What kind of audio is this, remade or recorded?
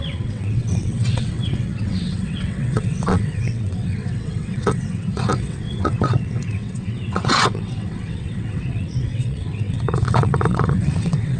remade